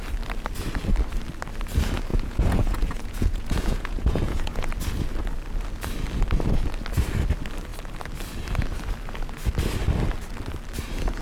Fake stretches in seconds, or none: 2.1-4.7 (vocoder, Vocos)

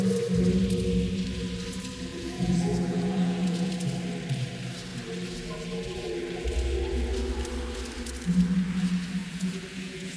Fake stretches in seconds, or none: 2.1-3.7 (vocoder, Vocos); 9.2-10.2

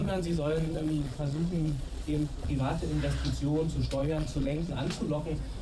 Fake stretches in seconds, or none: 0.0-2.5 (vocoder, Vocos); 4.0-4.7

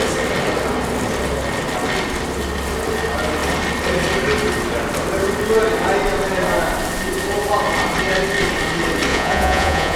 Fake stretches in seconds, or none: 9.1-10.0 (vocoder, Vocos)

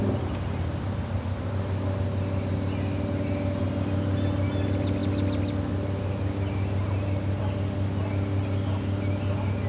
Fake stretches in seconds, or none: none

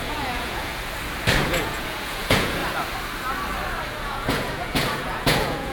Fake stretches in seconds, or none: 0.0-0.7 (vocoder, Vocos); 1.4-2.6; 3.8-5.7

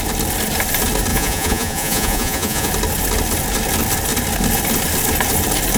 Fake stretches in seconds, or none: 1.1-2.7 (vocoder, Vocos)